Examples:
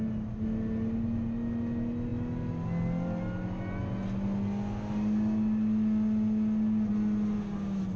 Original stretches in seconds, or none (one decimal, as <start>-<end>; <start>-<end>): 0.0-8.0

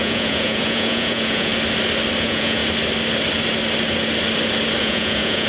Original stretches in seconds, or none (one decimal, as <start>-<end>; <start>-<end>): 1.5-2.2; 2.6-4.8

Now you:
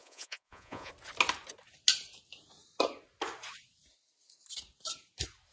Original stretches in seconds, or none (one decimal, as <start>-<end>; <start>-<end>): 0.9-5.5